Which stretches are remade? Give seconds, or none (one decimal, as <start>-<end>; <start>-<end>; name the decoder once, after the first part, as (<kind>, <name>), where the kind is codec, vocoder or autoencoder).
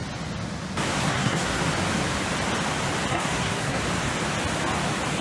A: 1.0-1.6 (codec, SNAC); 3.1-3.8